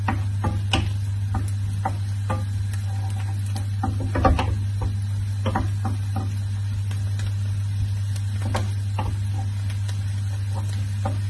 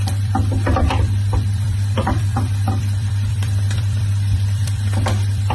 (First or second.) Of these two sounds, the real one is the first